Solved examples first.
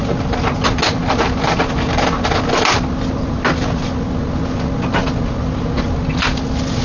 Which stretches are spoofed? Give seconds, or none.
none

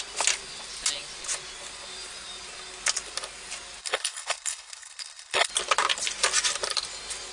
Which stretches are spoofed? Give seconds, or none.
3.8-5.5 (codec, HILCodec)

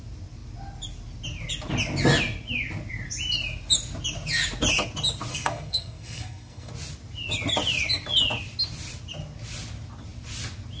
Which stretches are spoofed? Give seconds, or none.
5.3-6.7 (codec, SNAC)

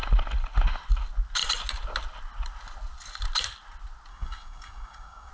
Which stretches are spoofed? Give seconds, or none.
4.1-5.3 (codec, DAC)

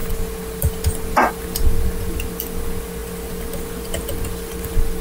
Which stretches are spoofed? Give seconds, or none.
none

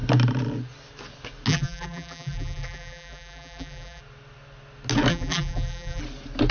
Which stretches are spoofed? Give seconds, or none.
1.5-4.0 (vocoder, BigVGAN v2); 5.1-6.0